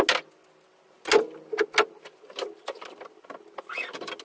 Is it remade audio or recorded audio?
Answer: recorded